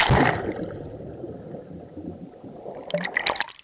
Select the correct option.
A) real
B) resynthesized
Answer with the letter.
A